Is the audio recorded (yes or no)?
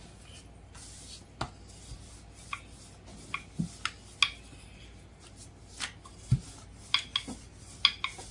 yes